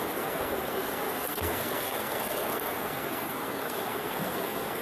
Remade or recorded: remade